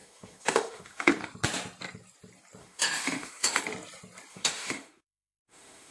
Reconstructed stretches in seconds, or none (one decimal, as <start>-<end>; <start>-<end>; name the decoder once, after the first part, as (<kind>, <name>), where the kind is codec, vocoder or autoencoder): 0.0-1.1 (autoencoder, DAC-VAE); 2.6-3.6; 4.3-5.9